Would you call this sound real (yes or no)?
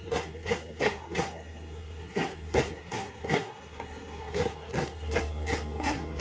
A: no